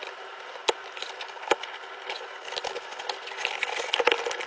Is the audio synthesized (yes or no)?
no